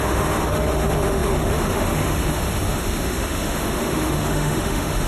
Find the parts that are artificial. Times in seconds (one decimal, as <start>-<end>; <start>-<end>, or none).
0.0-5.1